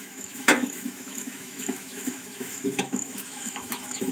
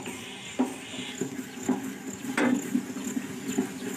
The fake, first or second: first